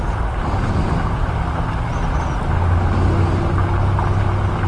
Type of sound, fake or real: real